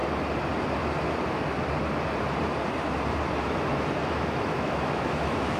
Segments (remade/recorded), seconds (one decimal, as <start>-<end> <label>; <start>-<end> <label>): 0.0-3.4 recorded; 3.4-5.6 remade